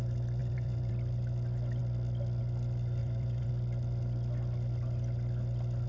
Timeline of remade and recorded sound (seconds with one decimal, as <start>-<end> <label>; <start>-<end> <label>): 0.0-0.4 recorded; 0.4-0.9 remade; 0.9-3.0 recorded; 3.0-3.5 remade; 3.5-5.9 recorded